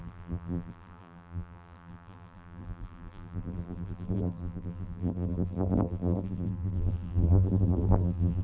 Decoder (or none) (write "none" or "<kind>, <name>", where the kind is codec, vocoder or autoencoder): vocoder, BigVGAN v2